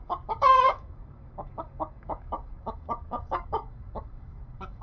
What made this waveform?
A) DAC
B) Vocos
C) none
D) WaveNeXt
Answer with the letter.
A